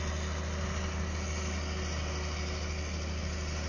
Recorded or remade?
recorded